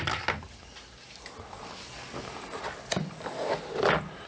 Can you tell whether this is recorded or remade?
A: recorded